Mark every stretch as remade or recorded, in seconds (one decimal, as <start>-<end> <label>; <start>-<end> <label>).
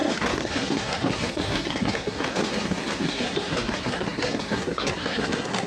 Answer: 0.0-5.7 remade